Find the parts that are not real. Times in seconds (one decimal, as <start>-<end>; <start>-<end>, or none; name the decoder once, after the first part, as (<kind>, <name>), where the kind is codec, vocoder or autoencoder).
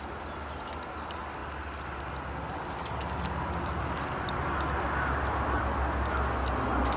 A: none